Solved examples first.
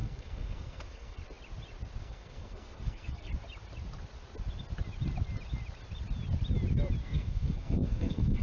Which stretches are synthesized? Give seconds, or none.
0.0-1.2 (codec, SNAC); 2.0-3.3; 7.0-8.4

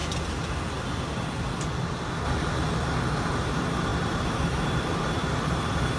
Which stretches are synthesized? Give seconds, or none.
3.2-6.0 (vocoder, BigVGAN v2)

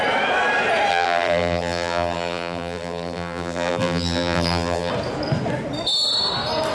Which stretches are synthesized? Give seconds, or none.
0.9-4.9 (vocoder, BigVGAN v2)

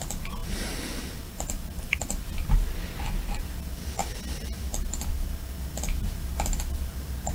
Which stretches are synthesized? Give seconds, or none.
0.4-3.6 (vocoder, BigVGAN v2); 4.0-5.1

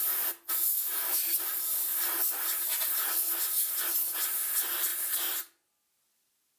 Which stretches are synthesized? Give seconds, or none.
0.7-1.2 (autoencoder, DAC-VAE)